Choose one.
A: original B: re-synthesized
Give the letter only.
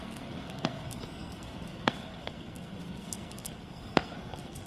B